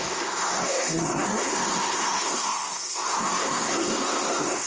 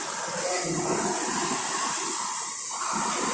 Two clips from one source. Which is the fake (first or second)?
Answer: first